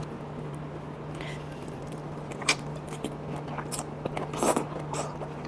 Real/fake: real